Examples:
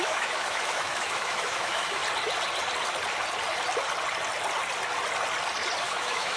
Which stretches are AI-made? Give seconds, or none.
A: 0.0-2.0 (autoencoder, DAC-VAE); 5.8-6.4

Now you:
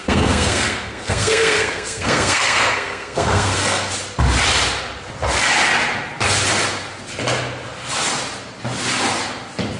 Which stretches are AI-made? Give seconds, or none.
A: 0.0-3.9 (codec, SNAC)

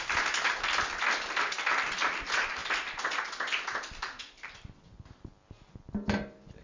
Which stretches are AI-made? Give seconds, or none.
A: none